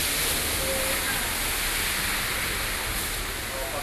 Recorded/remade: recorded